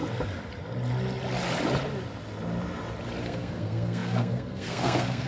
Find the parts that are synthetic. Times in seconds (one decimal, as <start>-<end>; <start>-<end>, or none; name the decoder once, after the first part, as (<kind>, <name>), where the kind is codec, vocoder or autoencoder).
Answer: 3.2-5.3 (codec, SNAC)